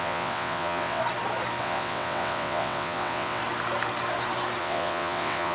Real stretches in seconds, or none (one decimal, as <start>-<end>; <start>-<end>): 1.0-1.6; 3.4-4.6

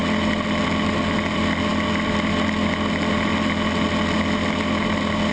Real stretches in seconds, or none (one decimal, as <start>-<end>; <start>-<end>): 0.0-5.3

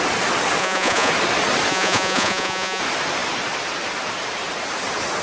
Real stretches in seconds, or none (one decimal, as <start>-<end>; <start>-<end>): 0.0-0.6; 1.1-1.7; 2.8-5.2

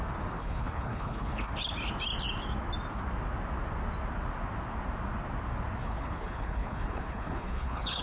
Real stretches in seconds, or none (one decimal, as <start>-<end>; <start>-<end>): 0.0-0.4; 1.5-5.8

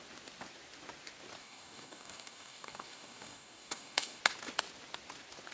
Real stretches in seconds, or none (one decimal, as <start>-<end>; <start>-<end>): 0.0-1.4; 4.2-5.5

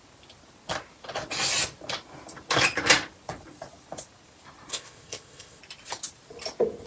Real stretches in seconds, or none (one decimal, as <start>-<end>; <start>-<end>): 0.0-4.7; 5.6-6.9

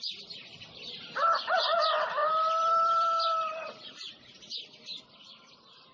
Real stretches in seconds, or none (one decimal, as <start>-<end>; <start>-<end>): 0.0-2.2; 5.0-5.9